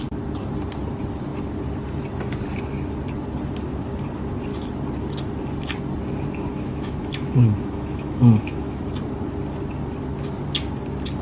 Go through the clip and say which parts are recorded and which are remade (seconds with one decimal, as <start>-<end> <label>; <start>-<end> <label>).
0.0-6.5 recorded; 6.5-8.8 remade; 8.8-11.2 recorded